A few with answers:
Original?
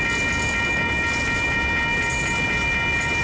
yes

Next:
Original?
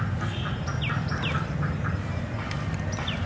yes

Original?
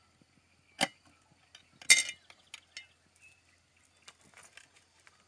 yes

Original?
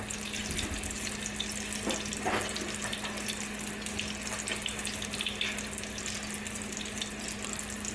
yes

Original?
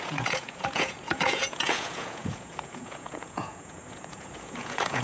no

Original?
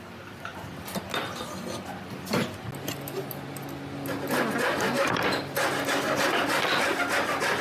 yes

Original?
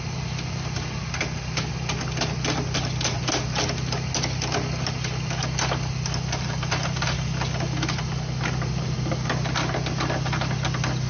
yes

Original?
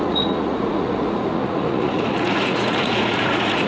no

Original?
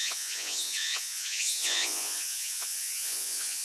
no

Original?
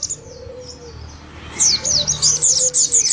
yes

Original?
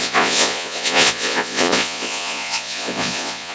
no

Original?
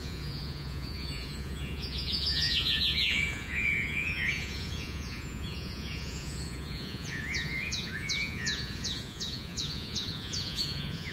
no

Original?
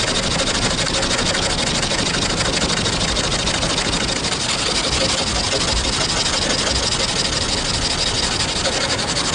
yes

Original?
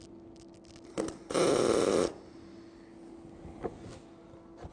yes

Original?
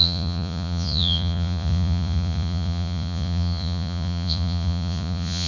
no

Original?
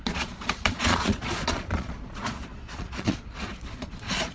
no